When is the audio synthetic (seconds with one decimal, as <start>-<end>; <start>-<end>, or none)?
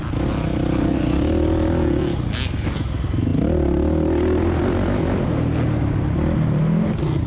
none